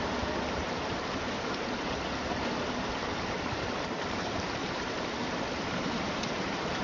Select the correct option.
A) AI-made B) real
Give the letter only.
A